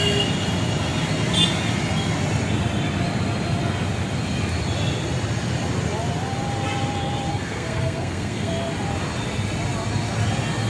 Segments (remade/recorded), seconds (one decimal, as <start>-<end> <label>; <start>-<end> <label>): 0.0-7.3 recorded; 7.3-8.5 remade; 8.5-10.7 recorded